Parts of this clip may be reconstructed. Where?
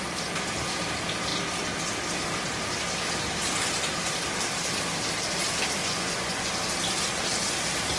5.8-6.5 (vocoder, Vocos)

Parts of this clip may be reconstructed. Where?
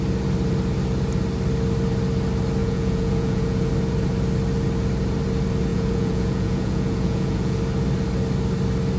2.6-3.7 (vocoder, Vocos); 5.7-7.6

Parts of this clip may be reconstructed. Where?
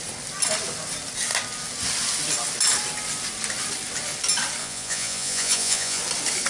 4.6-6.0 (vocoder, Vocos)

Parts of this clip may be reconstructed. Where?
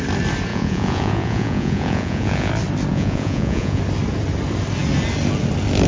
0.5-2.5 (vocoder, Vocos); 2.9-3.8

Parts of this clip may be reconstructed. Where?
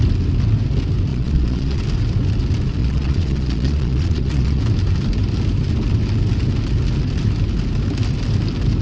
1.1-1.8 (vocoder, Vocos); 2.8-4.6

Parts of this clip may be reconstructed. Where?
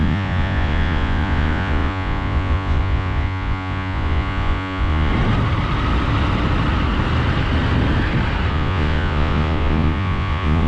0.0-5.1 (vocoder, Vocos); 8.5-10.7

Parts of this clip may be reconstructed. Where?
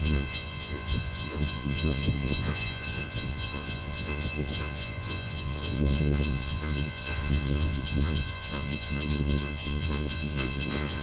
0.0-11.0 (vocoder, Vocos)